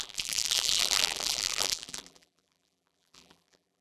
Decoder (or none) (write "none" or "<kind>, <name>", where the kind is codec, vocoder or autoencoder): vocoder, BigVGAN v2